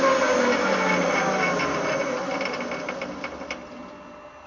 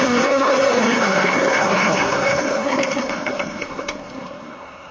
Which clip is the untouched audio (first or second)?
first